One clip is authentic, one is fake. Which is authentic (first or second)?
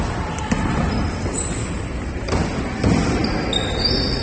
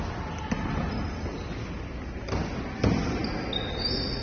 second